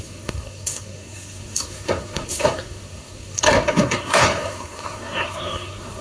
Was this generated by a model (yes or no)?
yes